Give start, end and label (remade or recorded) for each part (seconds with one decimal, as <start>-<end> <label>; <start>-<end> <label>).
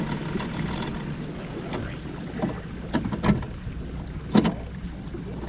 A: 0.0-5.5 recorded